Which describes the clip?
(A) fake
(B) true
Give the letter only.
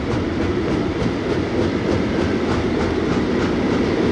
B